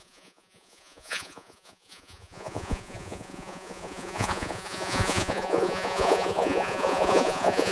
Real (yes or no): no